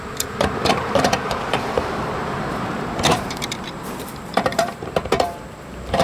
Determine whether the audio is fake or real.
fake